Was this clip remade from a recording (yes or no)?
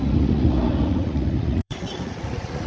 yes